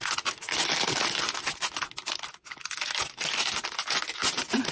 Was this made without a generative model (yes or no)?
yes